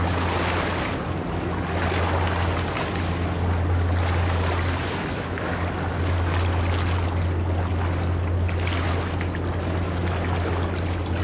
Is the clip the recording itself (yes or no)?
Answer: yes